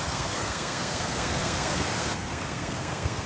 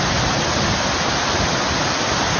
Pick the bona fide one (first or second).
second